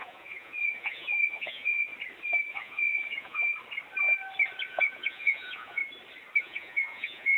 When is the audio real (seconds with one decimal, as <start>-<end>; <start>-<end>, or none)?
1.9-2.5; 3.5-4.7; 5.8-6.4